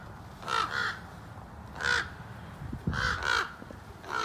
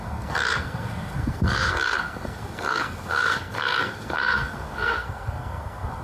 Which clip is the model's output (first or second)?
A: second